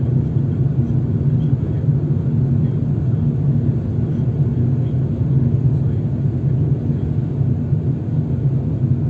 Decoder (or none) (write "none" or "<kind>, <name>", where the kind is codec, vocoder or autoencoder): none